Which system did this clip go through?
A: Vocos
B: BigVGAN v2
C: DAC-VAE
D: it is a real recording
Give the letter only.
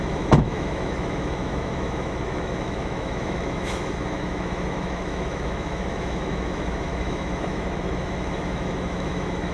C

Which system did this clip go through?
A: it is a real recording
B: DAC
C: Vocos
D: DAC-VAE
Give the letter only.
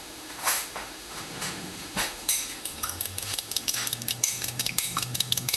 D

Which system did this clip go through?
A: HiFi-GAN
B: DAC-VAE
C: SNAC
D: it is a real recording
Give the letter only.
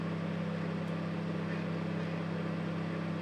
D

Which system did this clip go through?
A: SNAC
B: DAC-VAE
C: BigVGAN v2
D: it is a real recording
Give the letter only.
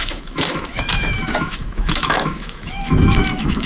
B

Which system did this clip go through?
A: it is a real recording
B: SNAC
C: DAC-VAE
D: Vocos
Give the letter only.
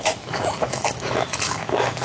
C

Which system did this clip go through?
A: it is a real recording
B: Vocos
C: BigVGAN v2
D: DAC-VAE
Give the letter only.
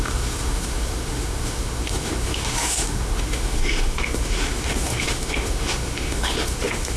D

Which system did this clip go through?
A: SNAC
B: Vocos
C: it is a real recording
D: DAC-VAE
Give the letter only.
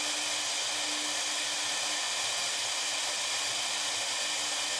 C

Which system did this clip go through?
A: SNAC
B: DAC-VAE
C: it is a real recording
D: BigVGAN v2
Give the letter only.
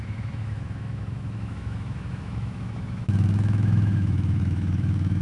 B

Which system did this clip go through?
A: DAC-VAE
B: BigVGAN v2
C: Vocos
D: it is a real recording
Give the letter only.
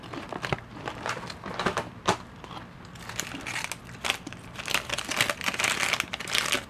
D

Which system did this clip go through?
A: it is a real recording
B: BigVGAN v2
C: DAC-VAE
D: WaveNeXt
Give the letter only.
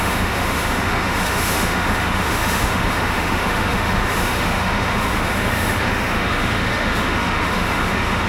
C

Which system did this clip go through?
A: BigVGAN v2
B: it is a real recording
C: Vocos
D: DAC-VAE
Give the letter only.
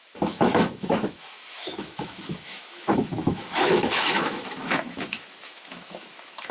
D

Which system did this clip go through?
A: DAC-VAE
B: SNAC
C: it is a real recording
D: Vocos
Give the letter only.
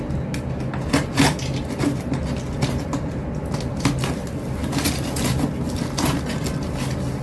C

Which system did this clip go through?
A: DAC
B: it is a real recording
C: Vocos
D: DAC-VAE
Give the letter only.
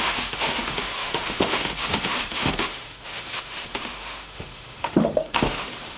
D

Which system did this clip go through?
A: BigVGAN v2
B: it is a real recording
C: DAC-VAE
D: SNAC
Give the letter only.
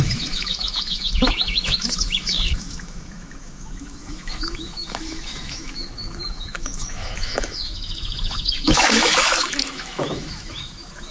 C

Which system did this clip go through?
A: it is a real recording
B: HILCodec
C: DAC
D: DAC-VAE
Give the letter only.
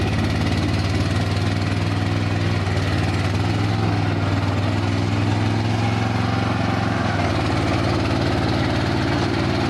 A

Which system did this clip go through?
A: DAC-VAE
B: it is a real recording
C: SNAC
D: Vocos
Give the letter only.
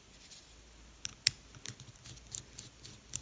B